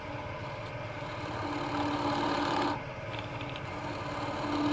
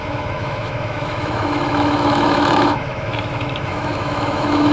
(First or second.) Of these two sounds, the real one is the first